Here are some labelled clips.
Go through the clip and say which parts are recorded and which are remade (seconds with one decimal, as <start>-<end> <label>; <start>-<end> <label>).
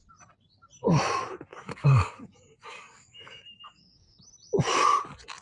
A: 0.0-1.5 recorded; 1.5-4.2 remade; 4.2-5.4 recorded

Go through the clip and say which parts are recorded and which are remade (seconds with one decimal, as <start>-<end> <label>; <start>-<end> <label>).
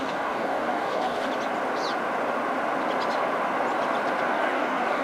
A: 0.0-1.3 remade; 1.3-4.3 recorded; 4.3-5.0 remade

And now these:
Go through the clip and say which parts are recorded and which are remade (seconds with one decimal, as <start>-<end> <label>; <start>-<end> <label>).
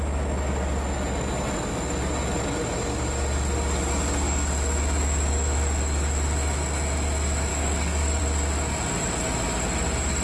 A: 0.0-7.5 recorded; 7.5-8.2 remade; 8.2-10.2 recorded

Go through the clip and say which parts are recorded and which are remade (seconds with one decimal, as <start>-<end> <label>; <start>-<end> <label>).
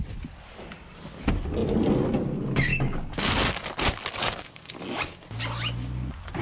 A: 0.0-2.7 recorded; 2.7-3.3 remade; 3.3-4.2 recorded; 4.2-4.7 remade; 4.7-6.4 recorded